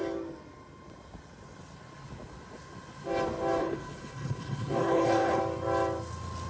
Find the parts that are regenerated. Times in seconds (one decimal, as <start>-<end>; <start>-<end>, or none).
3.6-5.4